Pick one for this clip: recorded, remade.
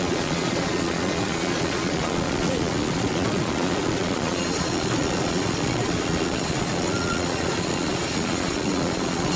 remade